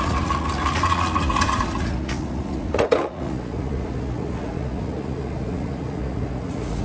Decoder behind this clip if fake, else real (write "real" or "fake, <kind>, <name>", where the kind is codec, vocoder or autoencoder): fake, vocoder, Vocos